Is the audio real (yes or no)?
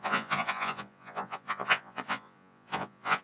no